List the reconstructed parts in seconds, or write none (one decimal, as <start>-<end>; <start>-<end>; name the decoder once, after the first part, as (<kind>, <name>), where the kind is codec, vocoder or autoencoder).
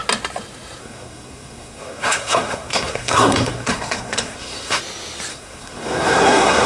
0.8-4.8 (codec, SNAC); 5.3-6.7